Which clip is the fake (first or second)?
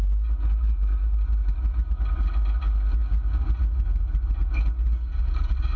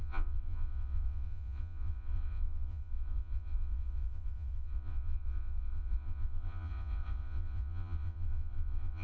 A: second